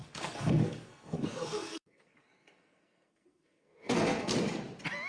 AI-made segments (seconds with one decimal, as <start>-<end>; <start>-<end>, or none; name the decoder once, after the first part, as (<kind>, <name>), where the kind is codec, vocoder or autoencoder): 0.0-4.3 (codec, SNAC)